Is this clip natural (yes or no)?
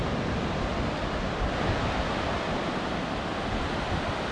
yes